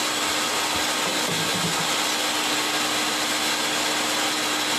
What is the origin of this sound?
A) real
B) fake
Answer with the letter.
A